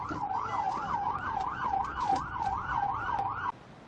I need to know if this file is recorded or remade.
remade